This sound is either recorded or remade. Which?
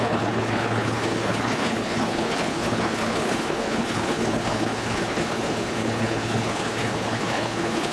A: remade